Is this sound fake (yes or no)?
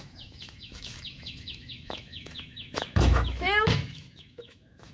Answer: yes